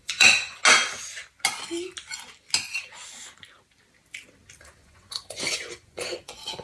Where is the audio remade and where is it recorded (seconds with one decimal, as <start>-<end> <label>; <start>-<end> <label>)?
0.0-0.6 remade; 0.6-4.6 recorded; 4.6-6.6 remade